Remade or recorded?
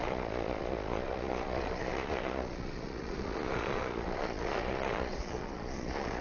remade